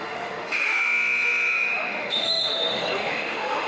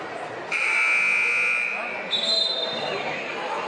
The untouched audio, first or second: second